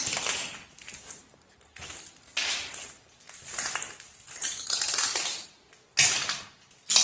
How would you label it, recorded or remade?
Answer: recorded